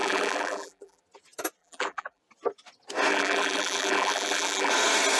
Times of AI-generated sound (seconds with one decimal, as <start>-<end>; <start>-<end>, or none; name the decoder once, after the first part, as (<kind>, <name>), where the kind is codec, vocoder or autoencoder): 0.0-1.0 (vocoder, BigVGAN v2); 1.6-2.2; 3.1-4.7